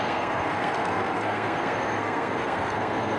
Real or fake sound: fake